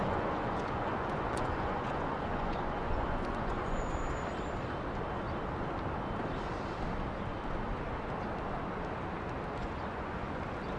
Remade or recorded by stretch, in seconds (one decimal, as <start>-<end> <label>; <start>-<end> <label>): 0.0-3.9 remade; 3.9-9.6 recorded; 9.6-10.4 remade; 10.4-10.8 recorded